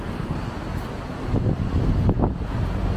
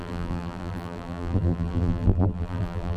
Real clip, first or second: first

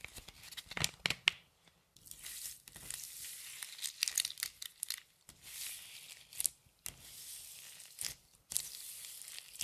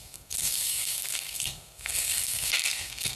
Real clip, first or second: first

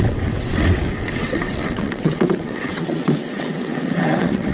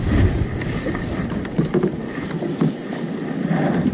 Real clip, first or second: second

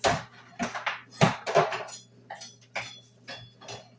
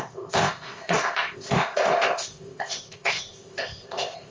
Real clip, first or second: first